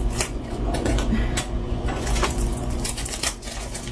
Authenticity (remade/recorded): remade